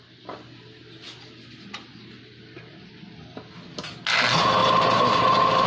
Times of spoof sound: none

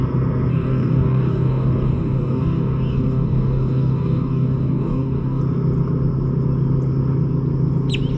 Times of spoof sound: 0.5-5.4 (codec, DAC)